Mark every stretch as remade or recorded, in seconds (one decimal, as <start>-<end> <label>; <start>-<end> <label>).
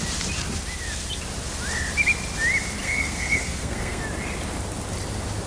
0.0-2.8 recorded; 2.8-4.0 remade; 4.0-5.5 recorded